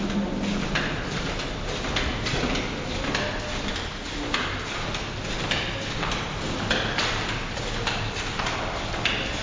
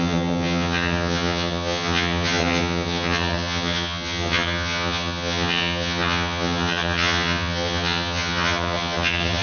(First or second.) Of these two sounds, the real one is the first